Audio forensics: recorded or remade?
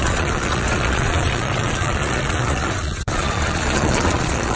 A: remade